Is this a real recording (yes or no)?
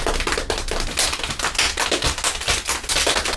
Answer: yes